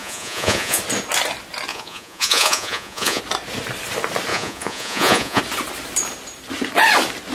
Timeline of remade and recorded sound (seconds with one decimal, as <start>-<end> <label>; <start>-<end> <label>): 0.0-0.8 remade; 0.8-1.7 recorded; 1.7-3.2 remade; 3.2-4.3 recorded; 4.3-5.4 remade; 5.4-7.3 recorded